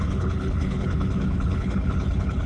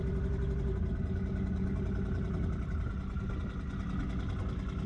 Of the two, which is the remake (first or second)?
first